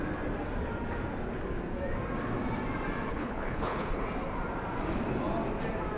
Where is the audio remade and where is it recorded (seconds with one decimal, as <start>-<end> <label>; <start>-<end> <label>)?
0.0-3.1 recorded; 3.1-4.0 remade; 4.0-6.0 recorded

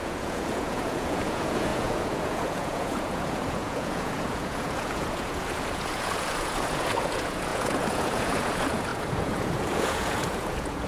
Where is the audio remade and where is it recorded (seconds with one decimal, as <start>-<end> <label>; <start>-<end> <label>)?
0.0-10.9 remade

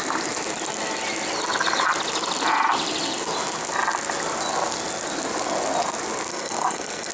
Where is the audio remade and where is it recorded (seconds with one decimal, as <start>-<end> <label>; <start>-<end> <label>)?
0.0-6.3 recorded; 6.3-7.1 remade

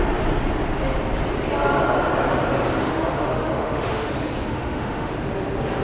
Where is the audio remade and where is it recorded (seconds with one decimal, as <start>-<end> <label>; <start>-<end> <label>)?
0.0-2.8 recorded; 2.8-4.1 remade; 4.1-4.5 recorded; 4.5-5.1 remade; 5.1-5.8 recorded

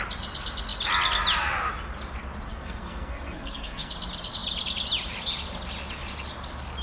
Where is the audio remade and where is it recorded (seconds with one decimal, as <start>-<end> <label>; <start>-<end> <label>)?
0.0-2.5 recorded; 2.5-3.9 remade; 3.9-6.8 recorded